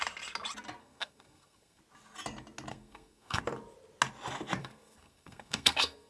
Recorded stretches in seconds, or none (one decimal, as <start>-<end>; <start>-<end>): 0.0-0.8; 1.8-2.7; 3.4-4.6